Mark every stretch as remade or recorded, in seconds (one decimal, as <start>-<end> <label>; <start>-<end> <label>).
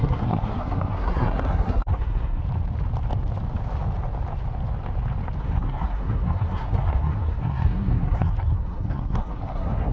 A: 0.0-2.4 remade; 2.4-5.4 recorded; 5.4-9.9 remade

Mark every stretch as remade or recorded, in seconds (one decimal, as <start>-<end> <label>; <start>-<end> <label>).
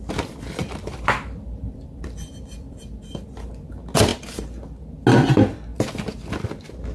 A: 0.0-0.6 recorded; 0.6-3.5 remade; 3.5-6.9 recorded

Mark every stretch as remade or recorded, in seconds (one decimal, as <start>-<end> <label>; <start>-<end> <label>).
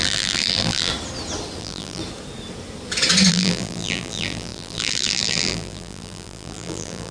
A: 0.0-0.9 remade; 0.9-1.6 recorded; 1.6-2.0 remade; 2.0-3.3 recorded; 3.3-7.1 remade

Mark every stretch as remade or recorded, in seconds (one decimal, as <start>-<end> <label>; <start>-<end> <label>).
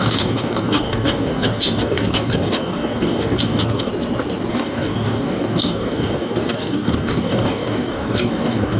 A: 0.0-3.9 remade; 3.9-4.5 recorded; 4.5-8.8 remade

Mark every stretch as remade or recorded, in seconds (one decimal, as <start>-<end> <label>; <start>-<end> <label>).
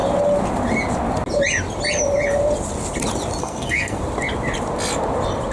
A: 0.0-3.4 recorded; 3.4-4.0 remade; 4.0-5.5 recorded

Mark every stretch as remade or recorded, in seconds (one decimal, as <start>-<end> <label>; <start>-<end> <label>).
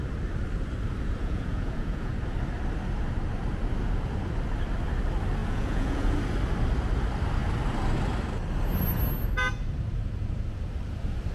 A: 0.0-1.2 recorded; 1.2-2.1 remade; 2.1-5.4 recorded; 5.4-6.2 remade; 6.2-11.3 recorded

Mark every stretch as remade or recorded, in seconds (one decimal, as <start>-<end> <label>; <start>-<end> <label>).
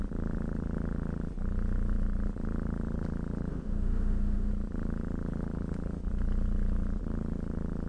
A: 0.0-3.5 recorded; 3.5-4.5 remade; 4.5-7.9 recorded